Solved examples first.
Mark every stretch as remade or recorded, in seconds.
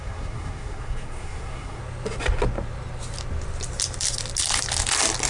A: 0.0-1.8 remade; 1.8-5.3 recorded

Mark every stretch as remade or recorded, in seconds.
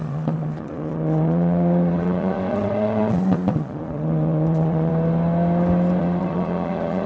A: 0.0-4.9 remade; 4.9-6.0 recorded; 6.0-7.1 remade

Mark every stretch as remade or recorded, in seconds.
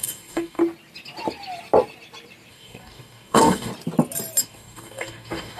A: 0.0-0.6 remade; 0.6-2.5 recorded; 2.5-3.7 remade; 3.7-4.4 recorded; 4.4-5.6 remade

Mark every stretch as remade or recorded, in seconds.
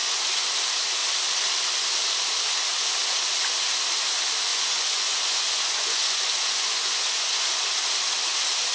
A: 0.0-0.5 remade; 0.5-4.5 recorded; 4.5-7.6 remade; 7.6-8.7 recorded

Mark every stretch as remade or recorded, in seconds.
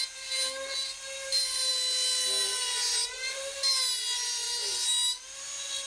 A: 0.0-5.9 recorded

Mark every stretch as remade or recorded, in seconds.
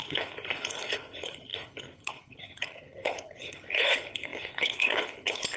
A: 0.0-5.6 remade